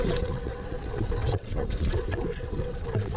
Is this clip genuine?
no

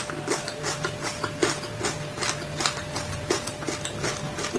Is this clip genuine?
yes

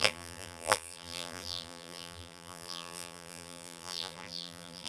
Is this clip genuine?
no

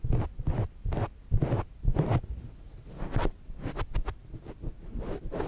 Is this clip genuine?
yes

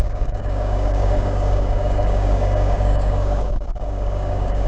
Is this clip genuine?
no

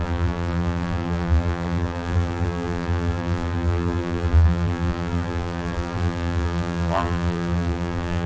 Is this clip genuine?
no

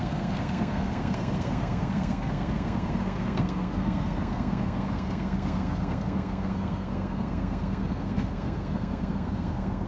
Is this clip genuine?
no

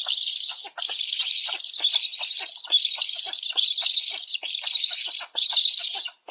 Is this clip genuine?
yes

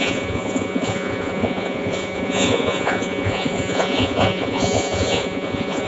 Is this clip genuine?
no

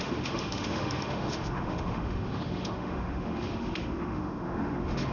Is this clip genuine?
no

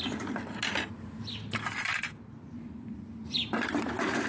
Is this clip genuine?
yes